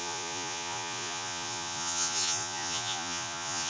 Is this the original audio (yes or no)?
no